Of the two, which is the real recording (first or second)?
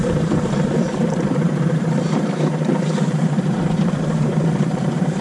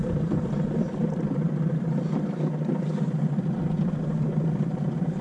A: second